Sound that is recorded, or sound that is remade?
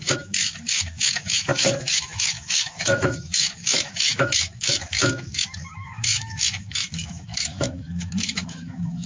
remade